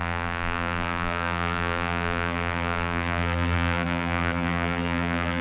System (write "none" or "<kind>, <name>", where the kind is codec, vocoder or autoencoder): vocoder, BigVGAN v2